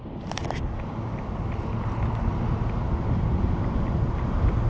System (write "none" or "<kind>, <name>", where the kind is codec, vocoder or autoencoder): none